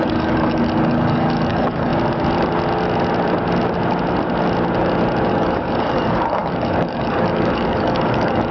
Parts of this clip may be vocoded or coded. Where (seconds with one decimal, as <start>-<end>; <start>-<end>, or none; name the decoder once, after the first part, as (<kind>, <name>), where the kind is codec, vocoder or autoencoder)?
0.0-1.9 (codec, DAC); 5.3-8.5